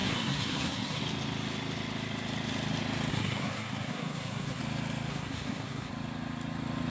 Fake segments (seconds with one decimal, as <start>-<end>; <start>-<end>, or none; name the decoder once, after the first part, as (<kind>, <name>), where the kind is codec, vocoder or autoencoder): 0.0-1.0 (codec, SNAC); 3.1-4.6; 5.1-5.9